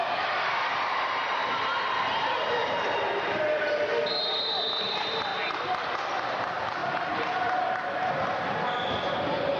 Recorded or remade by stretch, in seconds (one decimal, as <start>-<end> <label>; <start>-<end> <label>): 0.0-9.6 recorded